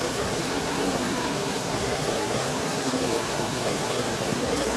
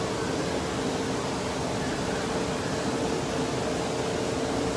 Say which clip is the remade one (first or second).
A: first